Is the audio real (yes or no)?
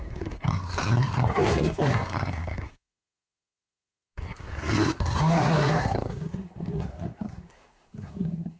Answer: no